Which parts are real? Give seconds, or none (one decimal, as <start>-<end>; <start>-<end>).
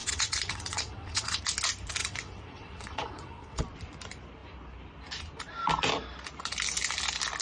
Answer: 1.4-2.0; 3.6-7.4